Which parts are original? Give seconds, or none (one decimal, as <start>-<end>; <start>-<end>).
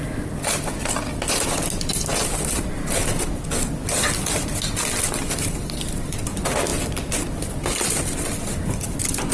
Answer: 0.0-9.3